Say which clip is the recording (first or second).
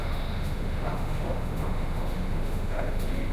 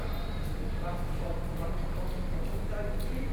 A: second